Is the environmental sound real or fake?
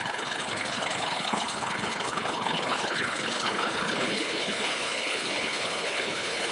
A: fake